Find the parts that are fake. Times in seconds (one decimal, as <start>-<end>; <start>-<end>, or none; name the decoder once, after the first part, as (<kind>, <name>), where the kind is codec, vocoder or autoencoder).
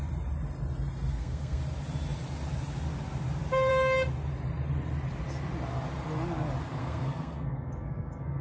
1.1-1.6 (codec, SNAC); 6.8-8.4